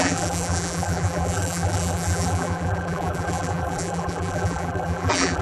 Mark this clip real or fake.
fake